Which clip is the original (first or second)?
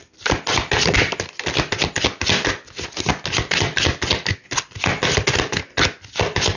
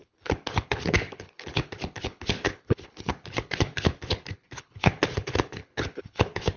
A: first